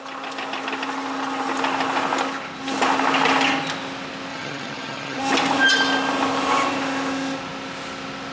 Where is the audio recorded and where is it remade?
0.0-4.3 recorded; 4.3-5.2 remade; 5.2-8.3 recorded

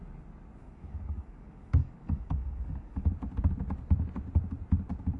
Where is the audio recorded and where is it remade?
0.0-0.6 recorded; 0.6-3.1 remade; 3.1-5.2 recorded

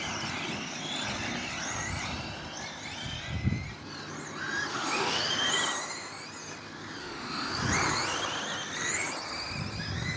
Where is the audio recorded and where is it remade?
0.0-4.7 recorded; 4.7-5.2 remade; 5.2-7.0 recorded; 7.0-7.5 remade; 7.5-10.2 recorded

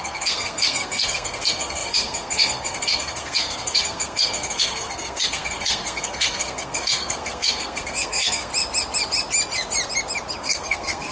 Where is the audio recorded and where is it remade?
0.0-8.5 remade; 8.5-10.4 recorded; 10.4-11.1 remade

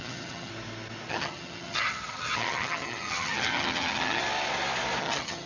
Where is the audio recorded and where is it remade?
0.0-0.5 remade; 0.5-1.1 recorded; 1.1-4.2 remade; 4.2-5.0 recorded; 5.0-5.5 remade

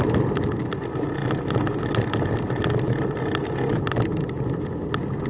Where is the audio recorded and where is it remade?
0.0-5.3 recorded

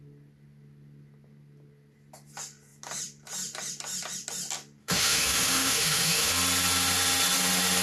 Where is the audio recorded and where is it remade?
0.0-4.8 recorded; 4.8-6.3 remade; 6.3-7.8 recorded

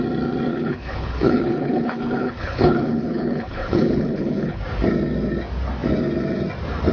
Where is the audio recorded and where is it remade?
0.0-0.5 recorded; 0.5-4.6 remade; 4.6-6.9 recorded